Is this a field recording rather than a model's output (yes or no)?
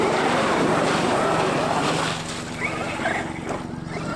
yes